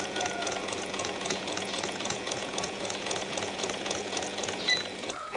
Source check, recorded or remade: remade